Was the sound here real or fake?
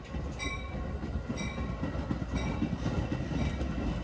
real